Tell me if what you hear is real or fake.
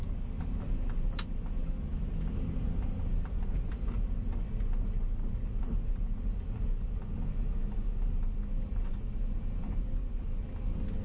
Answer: real